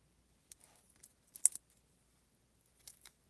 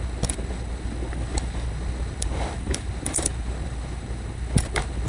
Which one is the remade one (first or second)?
second